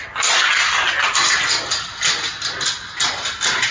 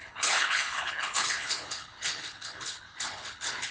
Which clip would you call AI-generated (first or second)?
second